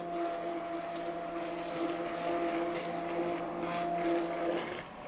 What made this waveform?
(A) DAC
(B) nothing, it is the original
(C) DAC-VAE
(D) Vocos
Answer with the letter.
B